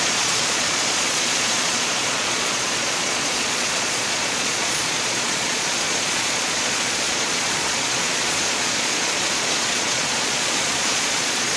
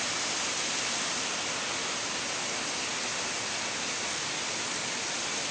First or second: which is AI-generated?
first